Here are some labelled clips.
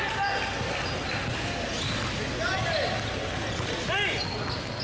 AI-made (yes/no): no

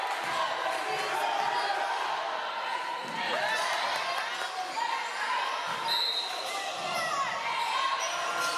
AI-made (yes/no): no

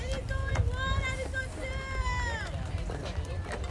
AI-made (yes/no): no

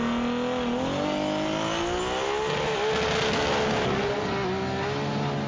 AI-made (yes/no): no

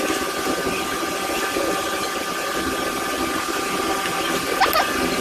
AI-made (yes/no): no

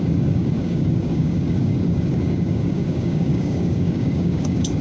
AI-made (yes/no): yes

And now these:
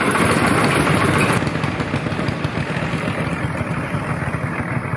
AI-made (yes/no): no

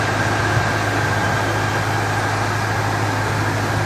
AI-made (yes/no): no